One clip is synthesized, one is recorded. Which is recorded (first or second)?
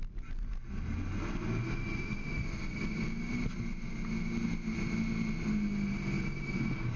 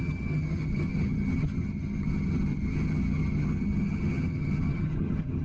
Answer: first